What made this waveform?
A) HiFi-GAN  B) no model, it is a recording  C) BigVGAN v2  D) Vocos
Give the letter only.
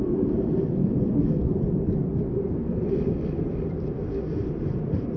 B